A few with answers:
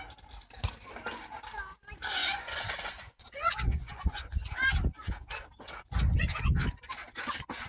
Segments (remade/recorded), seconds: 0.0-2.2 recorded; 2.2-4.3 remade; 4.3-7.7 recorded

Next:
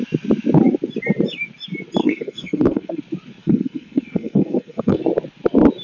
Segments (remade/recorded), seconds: 0.0-2.0 recorded; 2.0-3.0 remade; 3.0-3.4 recorded; 3.4-5.0 remade; 5.0-5.8 recorded

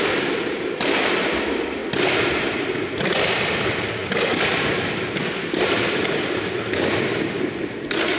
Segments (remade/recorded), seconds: 0.0-8.2 recorded